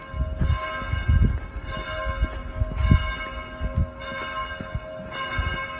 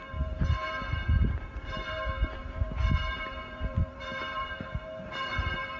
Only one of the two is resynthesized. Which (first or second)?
second